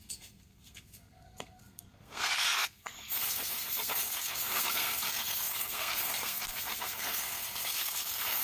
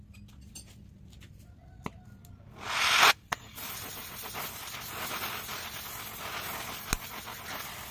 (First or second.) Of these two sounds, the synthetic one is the first